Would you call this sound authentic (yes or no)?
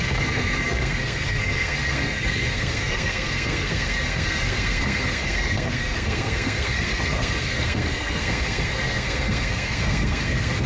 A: no